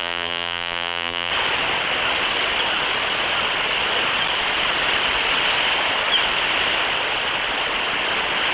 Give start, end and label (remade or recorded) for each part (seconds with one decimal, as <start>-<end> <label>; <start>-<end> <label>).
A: 0.0-1.3 remade; 1.3-8.5 recorded